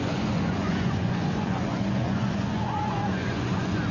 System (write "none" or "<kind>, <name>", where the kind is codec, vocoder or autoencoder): vocoder, Vocos